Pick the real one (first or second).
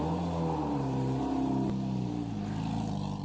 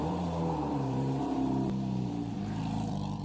first